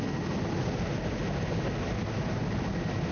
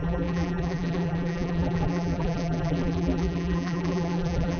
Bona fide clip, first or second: first